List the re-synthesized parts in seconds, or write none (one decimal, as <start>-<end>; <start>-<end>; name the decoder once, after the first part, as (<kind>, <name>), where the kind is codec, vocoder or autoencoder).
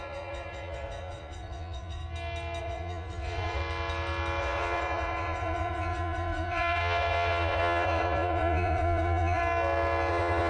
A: 0.0-2.0 (vocoder, Vocos); 2.6-3.6; 4.4-9.4; 10.1-10.5